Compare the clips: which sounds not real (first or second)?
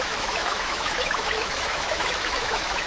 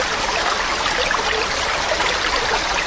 first